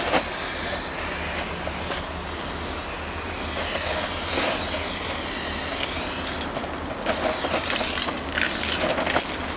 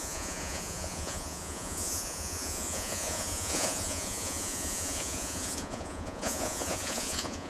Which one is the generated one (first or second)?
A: second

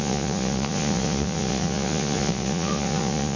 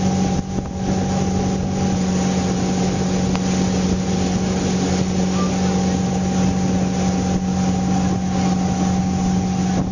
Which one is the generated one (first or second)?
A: first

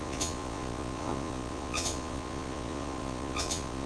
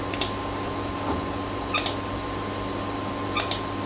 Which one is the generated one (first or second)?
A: first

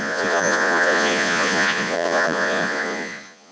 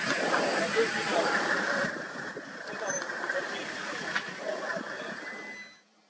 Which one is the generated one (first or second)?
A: first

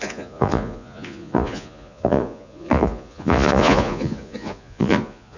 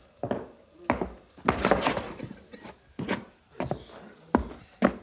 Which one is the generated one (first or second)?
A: first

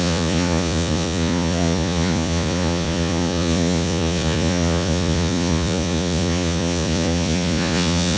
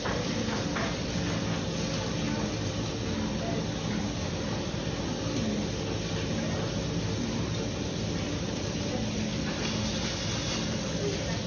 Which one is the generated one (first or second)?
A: first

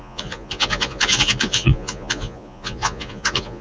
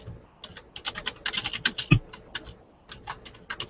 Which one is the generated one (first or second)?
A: first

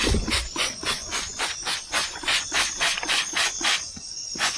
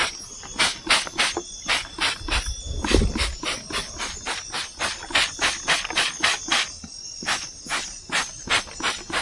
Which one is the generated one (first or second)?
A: first